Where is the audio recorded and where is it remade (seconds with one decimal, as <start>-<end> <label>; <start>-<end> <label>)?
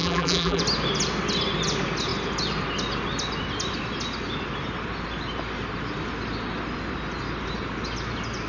0.0-0.6 remade; 0.6-8.5 recorded